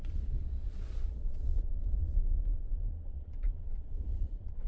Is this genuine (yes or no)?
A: no